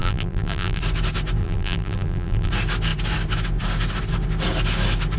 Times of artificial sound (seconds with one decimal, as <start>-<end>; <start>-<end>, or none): 0.0-0.8; 1.4-2.5